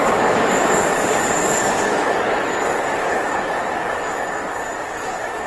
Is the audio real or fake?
fake